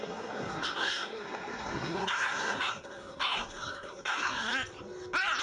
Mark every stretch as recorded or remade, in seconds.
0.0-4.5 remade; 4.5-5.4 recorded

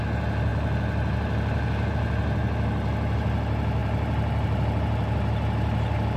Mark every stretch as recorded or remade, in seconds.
0.0-6.2 recorded

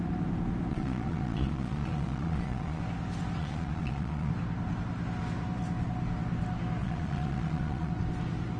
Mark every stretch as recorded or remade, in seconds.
0.0-0.7 recorded; 0.7-2.8 remade; 2.8-3.4 recorded; 3.4-4.3 remade; 4.3-6.8 recorded; 6.8-7.9 remade; 7.9-8.6 recorded